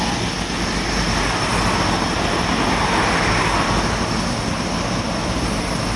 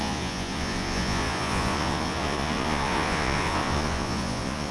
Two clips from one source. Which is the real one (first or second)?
first